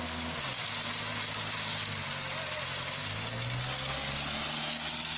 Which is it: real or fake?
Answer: real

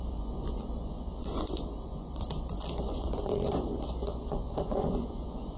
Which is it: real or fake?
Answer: fake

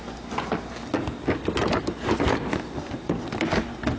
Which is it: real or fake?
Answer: real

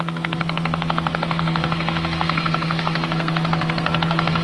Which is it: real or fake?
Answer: fake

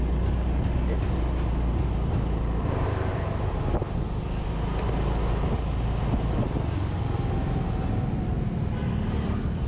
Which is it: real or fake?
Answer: real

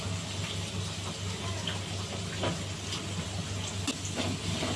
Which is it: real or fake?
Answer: real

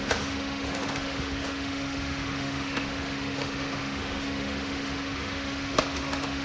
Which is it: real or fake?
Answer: fake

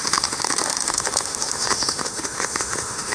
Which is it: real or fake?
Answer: fake